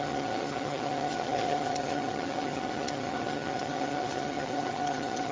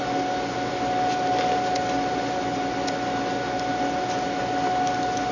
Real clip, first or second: second